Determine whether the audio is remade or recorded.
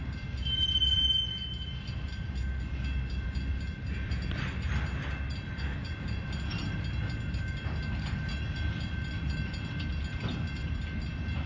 recorded